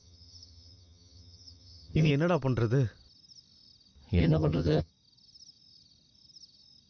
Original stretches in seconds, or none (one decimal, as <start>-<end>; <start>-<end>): 2.1-4.2; 4.9-6.9